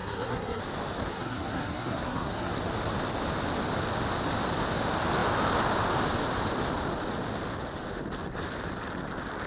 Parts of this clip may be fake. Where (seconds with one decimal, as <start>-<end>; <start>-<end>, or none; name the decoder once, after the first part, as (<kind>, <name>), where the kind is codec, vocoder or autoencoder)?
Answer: 0.0-0.6 (codec, SNAC); 1.1-2.5